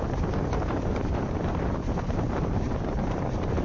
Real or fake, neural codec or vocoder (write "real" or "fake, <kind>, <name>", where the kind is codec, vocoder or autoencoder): fake, vocoder, BigVGAN v2